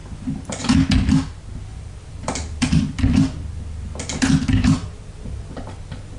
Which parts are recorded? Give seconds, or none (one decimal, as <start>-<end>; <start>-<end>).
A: 0.0-1.7; 5.4-6.2